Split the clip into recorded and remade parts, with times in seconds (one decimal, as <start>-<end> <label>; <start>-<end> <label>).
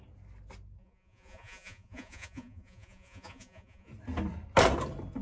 0.0-0.8 recorded; 0.8-3.9 remade; 3.9-5.2 recorded